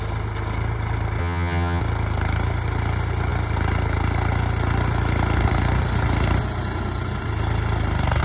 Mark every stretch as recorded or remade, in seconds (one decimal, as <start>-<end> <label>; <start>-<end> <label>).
0.0-1.2 recorded; 1.2-1.8 remade; 1.8-8.2 recorded